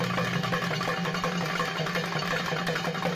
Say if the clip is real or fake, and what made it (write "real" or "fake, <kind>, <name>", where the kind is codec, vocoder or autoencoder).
real